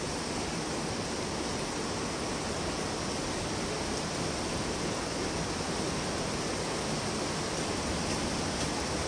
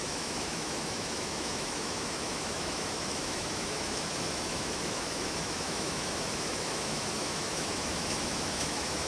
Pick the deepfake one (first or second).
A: second